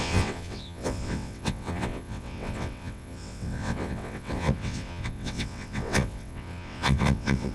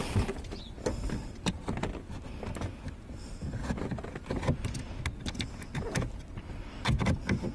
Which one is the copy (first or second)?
first